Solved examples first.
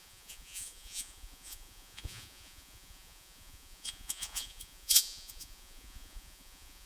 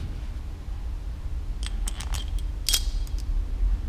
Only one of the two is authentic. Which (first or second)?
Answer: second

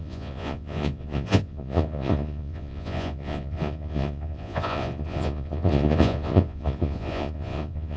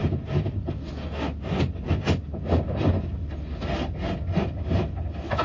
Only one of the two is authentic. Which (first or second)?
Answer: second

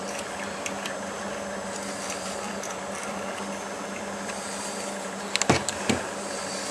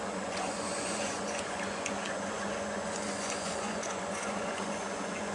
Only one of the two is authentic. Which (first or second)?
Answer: first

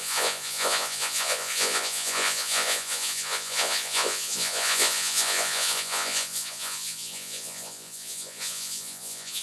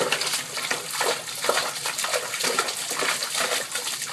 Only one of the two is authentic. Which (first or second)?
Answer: second